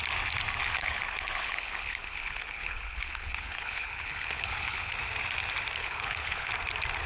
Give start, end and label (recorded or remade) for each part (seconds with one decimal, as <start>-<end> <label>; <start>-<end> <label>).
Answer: 0.0-0.6 recorded; 0.6-4.9 remade; 4.9-5.8 recorded; 5.8-6.5 remade; 6.5-7.1 recorded